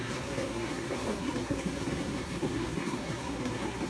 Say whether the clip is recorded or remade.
remade